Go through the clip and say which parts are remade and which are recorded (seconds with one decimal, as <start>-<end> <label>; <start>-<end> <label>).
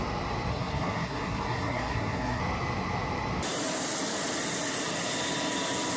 0.0-0.5 recorded; 0.5-2.4 remade; 2.4-6.0 recorded